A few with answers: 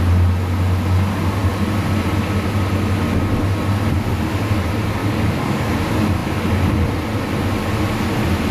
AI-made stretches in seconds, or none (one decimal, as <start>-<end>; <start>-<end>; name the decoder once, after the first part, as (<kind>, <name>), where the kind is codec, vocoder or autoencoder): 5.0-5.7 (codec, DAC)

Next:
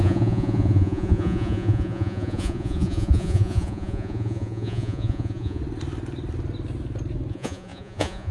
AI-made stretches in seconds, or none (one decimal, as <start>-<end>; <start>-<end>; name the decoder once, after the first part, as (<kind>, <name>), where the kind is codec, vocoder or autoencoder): 0.0-5.6 (vocoder, Vocos); 7.3-8.3

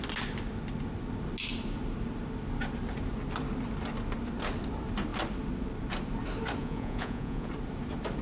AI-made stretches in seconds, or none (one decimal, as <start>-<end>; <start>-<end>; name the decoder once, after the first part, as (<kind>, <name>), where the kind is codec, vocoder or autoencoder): 6.6-7.5 (vocoder, Vocos)

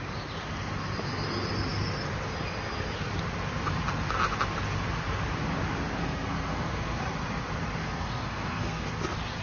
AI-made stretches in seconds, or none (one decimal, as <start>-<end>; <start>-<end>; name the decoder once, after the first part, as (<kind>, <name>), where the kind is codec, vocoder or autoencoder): 6.0-7.0 (codec, SNAC); 7.8-8.9

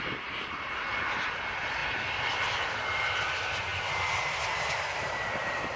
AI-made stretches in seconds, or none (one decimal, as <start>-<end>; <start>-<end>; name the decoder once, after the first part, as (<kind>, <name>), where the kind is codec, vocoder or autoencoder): 0.0-5.8 (vocoder, BigVGAN v2)